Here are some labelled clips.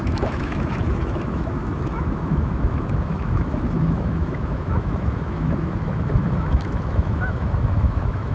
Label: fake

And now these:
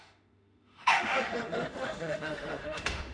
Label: fake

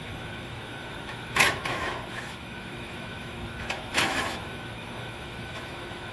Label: fake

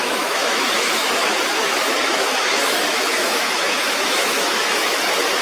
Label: fake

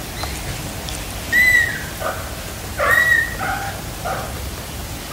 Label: real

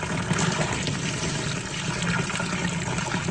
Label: real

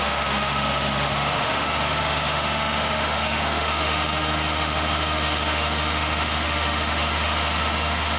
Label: fake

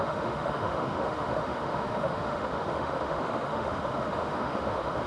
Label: fake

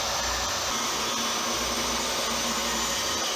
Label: real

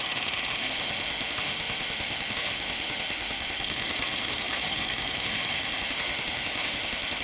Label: fake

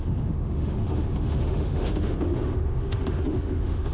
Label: fake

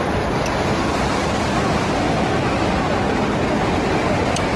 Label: real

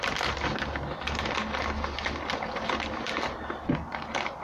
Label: real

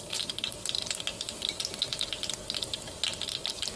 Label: real